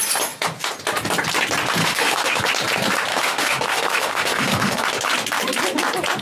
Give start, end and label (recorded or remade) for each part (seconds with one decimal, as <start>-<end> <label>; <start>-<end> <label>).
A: 0.0-1.8 recorded; 1.8-2.4 remade; 2.4-3.1 recorded; 3.1-4.8 remade; 4.8-6.2 recorded